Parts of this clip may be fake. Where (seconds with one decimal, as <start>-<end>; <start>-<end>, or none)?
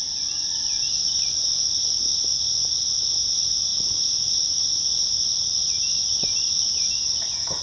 none